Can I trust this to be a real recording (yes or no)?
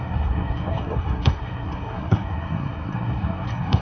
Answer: no